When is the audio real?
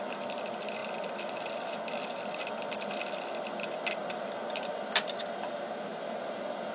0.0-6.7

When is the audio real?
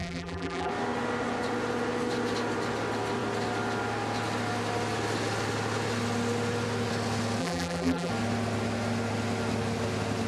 0.7-7.4; 8.1-10.3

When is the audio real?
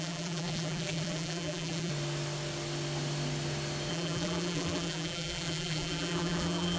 1.9-3.9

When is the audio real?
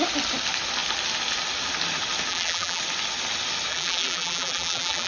0.0-2.3; 2.8-3.7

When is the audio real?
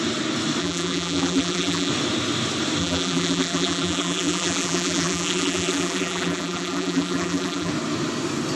0.0-0.6; 1.9-2.8; 7.7-8.6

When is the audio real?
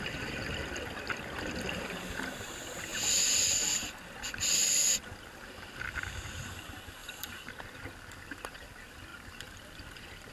0.0-7.0; 7.5-10.3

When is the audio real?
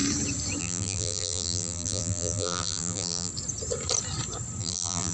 0.0-0.6; 3.3-4.6